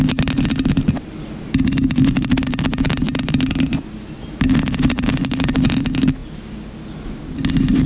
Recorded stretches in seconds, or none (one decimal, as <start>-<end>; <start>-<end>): 0.0-7.9